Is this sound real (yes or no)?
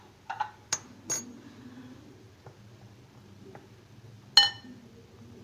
yes